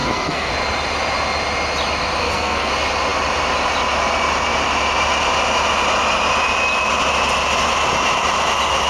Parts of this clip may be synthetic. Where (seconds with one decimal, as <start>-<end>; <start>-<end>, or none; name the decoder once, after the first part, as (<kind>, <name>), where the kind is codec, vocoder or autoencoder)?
0.0-0.5 (codec, SNAC); 2.2-2.7